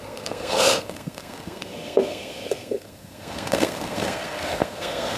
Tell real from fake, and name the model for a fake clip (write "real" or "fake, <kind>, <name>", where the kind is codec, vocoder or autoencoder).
fake, codec, SNAC